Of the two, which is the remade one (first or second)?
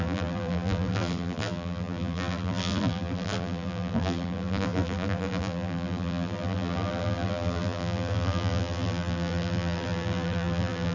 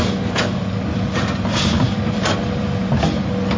first